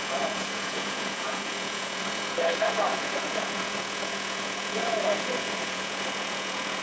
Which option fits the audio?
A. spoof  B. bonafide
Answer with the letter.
A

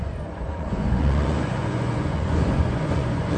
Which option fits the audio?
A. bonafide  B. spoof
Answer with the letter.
B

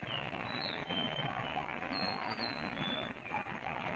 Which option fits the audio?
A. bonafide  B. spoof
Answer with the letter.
B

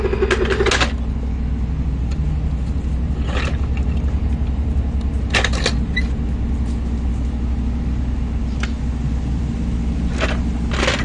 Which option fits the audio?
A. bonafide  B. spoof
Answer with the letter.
A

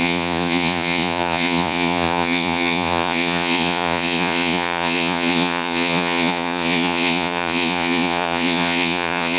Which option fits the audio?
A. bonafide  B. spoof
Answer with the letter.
B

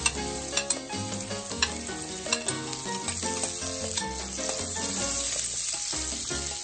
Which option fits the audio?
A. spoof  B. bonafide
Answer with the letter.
B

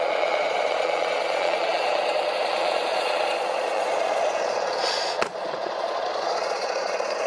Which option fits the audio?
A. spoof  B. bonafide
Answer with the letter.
A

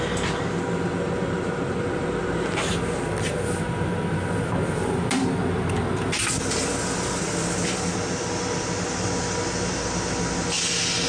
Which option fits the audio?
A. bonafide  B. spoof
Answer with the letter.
A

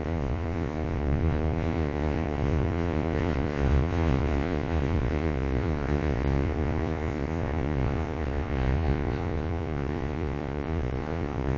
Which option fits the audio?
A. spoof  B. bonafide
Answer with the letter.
A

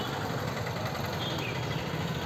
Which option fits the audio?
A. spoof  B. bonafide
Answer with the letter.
B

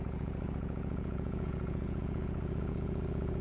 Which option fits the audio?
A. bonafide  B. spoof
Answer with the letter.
B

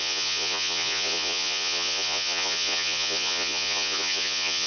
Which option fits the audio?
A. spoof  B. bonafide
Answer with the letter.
A